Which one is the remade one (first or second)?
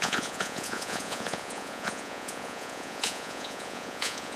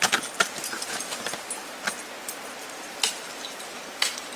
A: first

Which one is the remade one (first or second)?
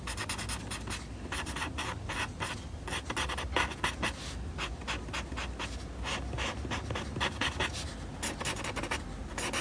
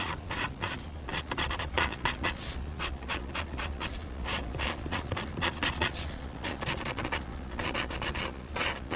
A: second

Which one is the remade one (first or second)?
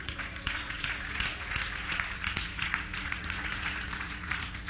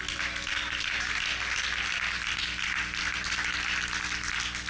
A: first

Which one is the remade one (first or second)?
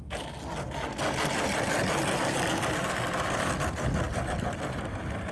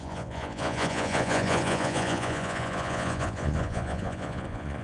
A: second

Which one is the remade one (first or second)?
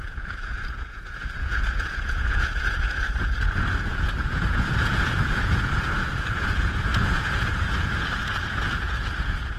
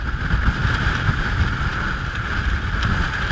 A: first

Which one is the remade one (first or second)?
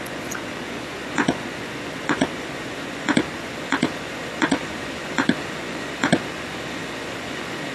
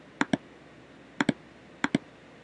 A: first